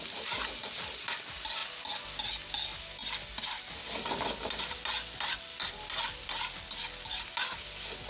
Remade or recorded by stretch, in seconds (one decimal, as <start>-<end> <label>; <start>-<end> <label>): 0.0-8.1 recorded